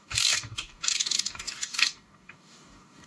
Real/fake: fake